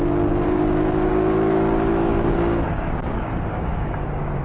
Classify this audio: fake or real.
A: fake